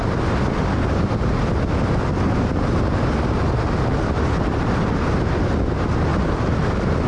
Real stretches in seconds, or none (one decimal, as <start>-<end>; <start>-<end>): 0.0-4.3; 6.1-7.1